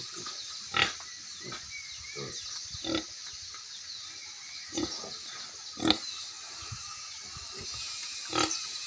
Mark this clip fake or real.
real